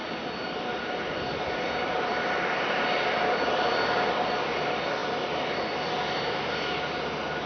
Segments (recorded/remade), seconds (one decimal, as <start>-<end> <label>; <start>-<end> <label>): 0.0-2.7 remade; 2.7-5.0 recorded; 5.0-5.7 remade; 5.7-7.5 recorded